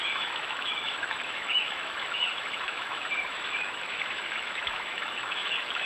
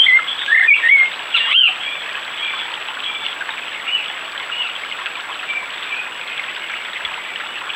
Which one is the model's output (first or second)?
first